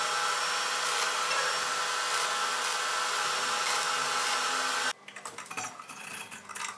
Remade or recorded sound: recorded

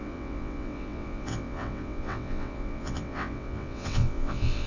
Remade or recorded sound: remade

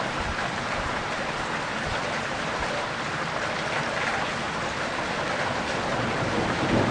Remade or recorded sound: recorded